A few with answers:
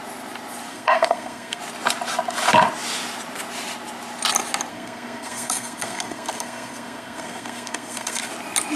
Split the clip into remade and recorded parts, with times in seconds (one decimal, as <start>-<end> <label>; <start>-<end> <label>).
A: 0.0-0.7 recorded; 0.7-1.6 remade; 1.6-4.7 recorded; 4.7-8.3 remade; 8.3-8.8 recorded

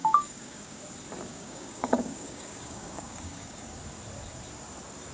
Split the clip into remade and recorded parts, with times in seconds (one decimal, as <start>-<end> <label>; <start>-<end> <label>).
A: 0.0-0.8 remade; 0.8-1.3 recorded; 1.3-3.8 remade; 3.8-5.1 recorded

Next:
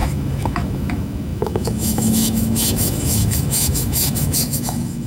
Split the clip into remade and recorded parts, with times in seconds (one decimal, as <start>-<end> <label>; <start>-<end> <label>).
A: 0.0-5.1 remade

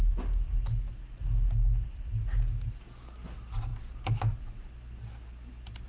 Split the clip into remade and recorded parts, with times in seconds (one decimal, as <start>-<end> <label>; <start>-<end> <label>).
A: 0.0-5.9 recorded